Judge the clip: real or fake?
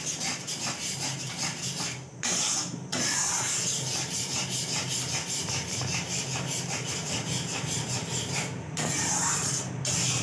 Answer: fake